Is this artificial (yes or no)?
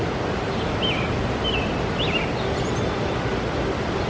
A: no